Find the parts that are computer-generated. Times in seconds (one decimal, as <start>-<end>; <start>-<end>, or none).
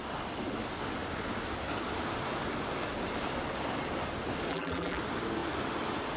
4.5-5.0